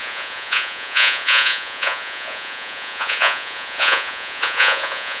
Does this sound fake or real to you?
fake